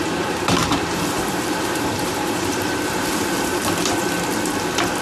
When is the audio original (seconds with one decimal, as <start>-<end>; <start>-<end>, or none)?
0.0-0.6; 3.6-5.0